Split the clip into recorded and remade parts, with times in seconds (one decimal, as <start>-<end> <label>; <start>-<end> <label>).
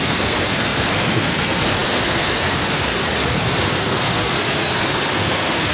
0.0-5.7 remade